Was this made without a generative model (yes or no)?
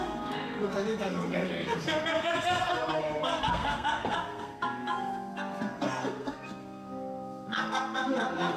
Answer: no